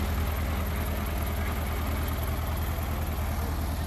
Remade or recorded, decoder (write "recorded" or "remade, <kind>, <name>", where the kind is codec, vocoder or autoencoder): recorded